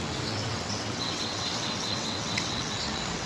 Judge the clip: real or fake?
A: fake